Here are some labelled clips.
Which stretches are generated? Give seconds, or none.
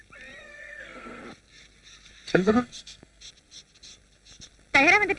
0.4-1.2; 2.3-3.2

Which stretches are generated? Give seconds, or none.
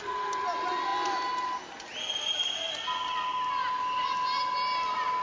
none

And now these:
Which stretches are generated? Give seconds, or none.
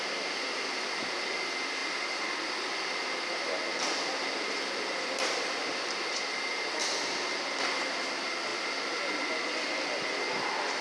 none